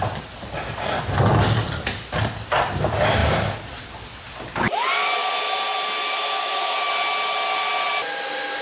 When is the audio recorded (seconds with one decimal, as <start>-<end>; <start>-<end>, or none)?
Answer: 0.0-6.0; 6.9-8.6